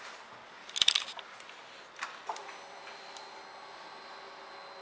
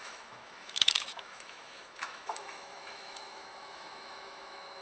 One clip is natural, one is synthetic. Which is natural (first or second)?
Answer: first